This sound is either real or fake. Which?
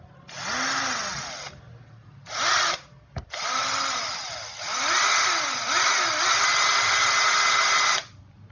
real